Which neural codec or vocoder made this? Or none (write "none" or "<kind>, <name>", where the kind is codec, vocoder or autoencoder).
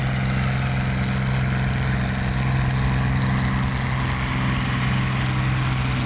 none